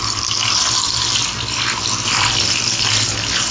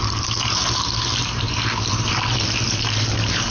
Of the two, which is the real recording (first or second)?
first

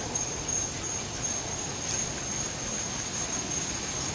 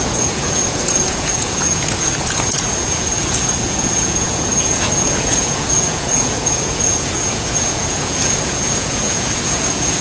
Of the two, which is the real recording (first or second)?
first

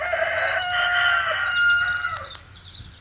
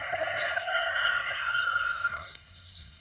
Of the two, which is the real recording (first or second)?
first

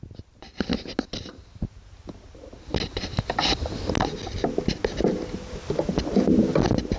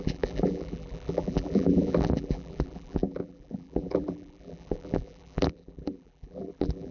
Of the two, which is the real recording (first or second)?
first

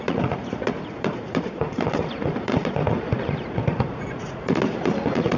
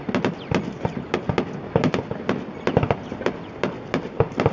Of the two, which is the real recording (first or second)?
second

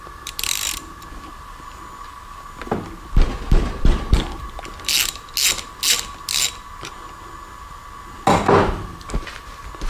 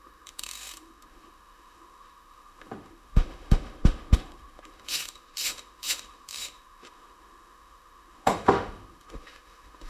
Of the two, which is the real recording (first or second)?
first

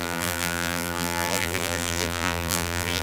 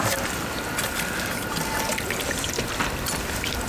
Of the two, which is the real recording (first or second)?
second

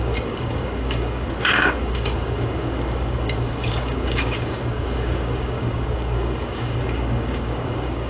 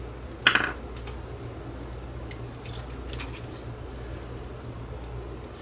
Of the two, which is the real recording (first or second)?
second